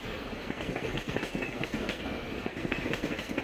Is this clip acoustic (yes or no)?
no